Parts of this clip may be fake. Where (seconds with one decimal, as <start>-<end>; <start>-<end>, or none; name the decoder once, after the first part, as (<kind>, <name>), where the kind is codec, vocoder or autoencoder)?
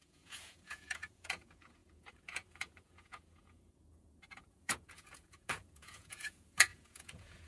0.0-7.5 (vocoder, Vocos)